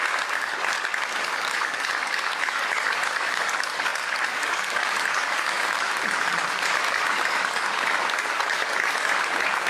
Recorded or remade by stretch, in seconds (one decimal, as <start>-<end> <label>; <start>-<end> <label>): 0.0-9.7 remade